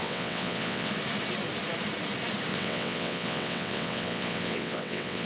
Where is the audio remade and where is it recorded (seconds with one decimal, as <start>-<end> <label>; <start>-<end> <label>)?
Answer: 0.0-0.9 remade; 0.9-2.5 recorded; 2.5-5.3 remade